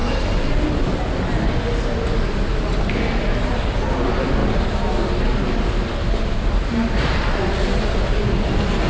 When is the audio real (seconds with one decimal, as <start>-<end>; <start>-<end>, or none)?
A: 0.0-8.9